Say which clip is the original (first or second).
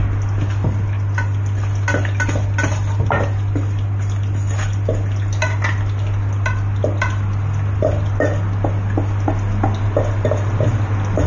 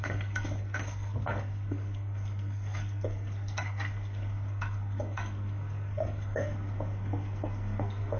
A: first